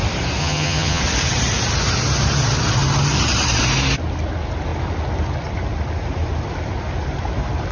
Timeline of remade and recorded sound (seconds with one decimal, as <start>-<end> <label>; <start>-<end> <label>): 0.0-0.4 recorded; 0.4-1.0 remade; 1.0-7.7 recorded

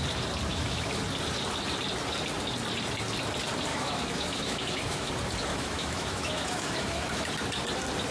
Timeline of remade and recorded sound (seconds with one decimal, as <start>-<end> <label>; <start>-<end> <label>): 0.0-0.5 recorded; 0.5-1.0 remade; 1.0-3.7 recorded; 3.7-5.1 remade; 5.1-5.5 recorded; 5.5-7.3 remade; 7.3-8.1 recorded